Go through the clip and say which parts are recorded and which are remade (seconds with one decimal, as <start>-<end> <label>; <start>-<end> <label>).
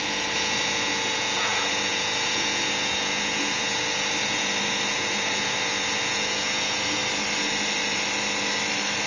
0.0-7.0 remade; 7.0-9.1 recorded